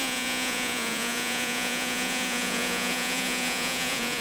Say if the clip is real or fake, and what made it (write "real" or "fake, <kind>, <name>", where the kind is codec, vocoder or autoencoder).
fake, vocoder, Vocos